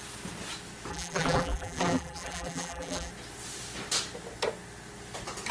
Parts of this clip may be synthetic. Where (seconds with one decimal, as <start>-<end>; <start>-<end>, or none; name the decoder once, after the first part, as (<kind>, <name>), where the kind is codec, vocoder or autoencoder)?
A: 0.9-3.1 (vocoder, BigVGAN v2)